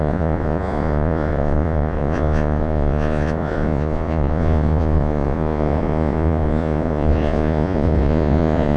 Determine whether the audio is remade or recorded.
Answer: remade